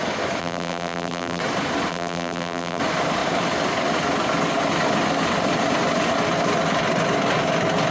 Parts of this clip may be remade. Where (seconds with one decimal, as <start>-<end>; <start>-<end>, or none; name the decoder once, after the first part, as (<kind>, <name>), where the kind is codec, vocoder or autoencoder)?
0.4-1.4 (vocoder, BigVGAN v2); 1.9-2.8